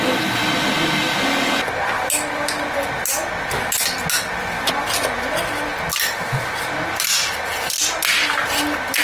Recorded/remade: recorded